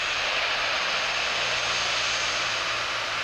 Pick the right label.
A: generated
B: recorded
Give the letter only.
B